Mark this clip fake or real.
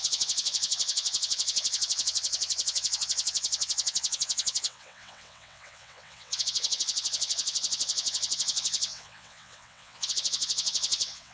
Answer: fake